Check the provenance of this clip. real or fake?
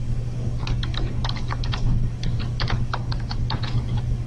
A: fake